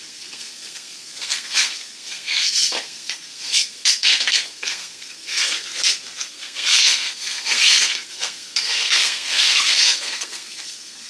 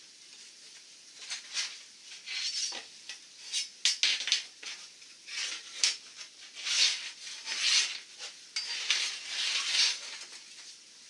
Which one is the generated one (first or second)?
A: first